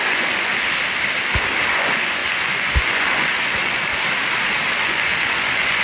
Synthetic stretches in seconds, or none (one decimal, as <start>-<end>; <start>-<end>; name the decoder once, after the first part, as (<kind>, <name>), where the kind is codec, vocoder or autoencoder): 0.0-0.5 (vocoder, Vocos); 1.7-3.9; 4.8-5.8